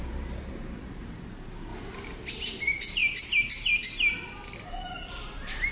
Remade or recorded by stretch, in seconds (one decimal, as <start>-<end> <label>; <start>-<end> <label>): 0.0-1.7 remade; 1.7-2.3 recorded; 2.3-3.0 remade; 3.0-3.8 recorded; 3.8-5.7 remade